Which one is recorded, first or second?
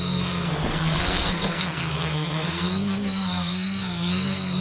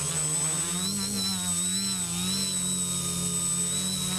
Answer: second